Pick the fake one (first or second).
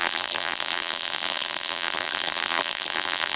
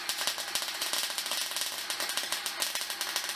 first